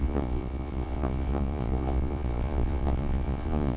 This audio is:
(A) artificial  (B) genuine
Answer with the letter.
A